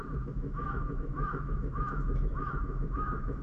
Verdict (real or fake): fake